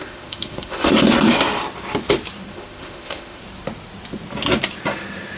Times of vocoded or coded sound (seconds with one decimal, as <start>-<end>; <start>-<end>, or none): 0.0-0.9; 2.5-3.4